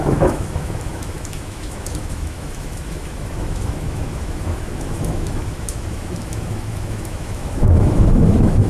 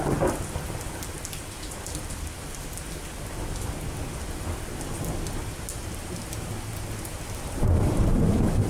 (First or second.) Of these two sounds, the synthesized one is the first